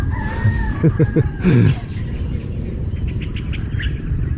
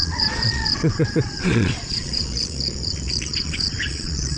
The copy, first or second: second